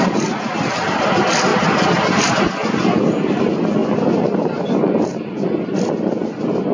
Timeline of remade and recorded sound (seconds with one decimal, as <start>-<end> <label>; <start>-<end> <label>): 0.0-6.7 recorded